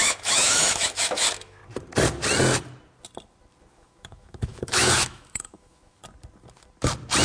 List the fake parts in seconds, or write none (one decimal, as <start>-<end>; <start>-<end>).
0.0-1.6; 3.7-6.0